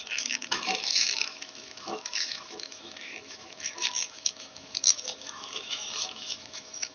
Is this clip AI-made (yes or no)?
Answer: yes